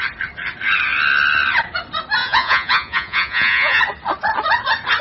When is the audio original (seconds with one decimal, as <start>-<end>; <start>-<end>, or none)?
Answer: 0.0-2.2; 3.8-5.0